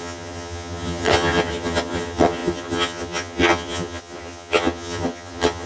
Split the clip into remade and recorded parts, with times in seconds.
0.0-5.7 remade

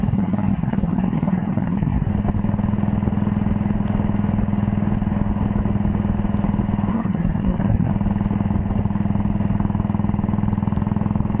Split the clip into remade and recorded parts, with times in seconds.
0.0-2.1 remade; 2.1-6.9 recorded; 6.9-7.9 remade; 7.9-11.4 recorded

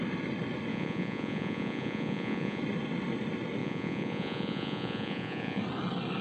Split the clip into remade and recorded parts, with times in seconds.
0.0-0.7 recorded; 0.7-2.6 remade; 2.6-3.6 recorded; 3.6-5.6 remade; 5.6-6.2 recorded

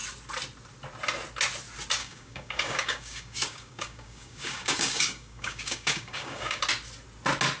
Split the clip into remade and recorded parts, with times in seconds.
0.0-2.0 recorded; 2.0-6.6 remade; 6.6-7.6 recorded

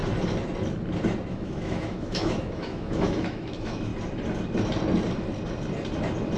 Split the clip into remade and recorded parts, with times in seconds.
0.0-1.3 recorded; 1.3-3.9 remade; 3.9-6.4 recorded

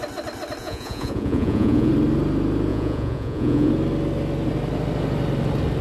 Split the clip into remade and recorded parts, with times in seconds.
0.0-0.6 recorded; 0.6-1.9 remade; 1.9-2.7 recorded; 2.7-3.7 remade; 3.7-5.8 recorded

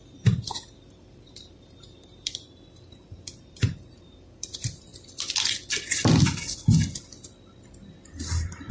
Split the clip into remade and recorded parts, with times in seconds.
0.0-4.9 remade; 4.9-8.7 recorded

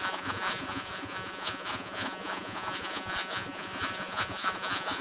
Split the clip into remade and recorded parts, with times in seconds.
0.0-5.0 remade